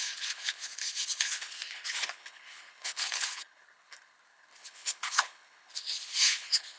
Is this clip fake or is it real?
fake